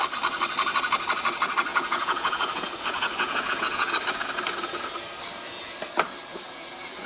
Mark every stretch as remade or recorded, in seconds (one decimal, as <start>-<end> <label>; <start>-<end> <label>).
0.0-1.7 recorded; 1.7-3.9 remade; 3.9-6.3 recorded; 6.3-7.1 remade